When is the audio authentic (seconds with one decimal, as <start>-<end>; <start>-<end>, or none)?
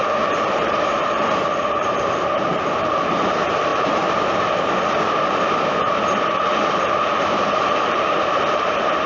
none